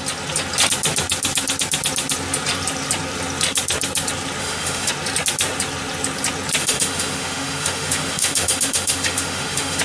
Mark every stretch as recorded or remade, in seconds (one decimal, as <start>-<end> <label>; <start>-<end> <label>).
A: 0.0-4.4 recorded; 4.4-4.9 remade; 4.9-6.6 recorded; 6.6-9.8 remade